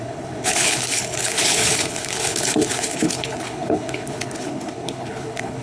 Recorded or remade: remade